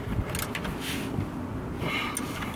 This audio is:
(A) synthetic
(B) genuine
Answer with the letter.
B